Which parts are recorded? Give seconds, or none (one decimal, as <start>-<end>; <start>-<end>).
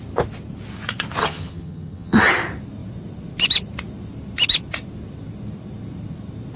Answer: 0.0-1.2; 2.3-6.6